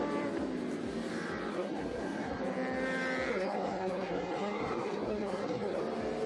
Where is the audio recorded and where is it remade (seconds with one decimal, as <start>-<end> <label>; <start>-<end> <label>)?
0.0-1.5 recorded; 1.5-2.4 remade; 2.4-3.3 recorded; 3.3-5.8 remade; 5.8-6.3 recorded